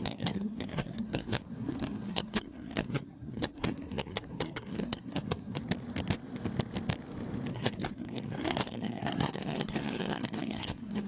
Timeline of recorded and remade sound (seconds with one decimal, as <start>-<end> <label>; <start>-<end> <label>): 0.0-5.6 remade; 5.6-7.5 recorded; 7.5-11.1 remade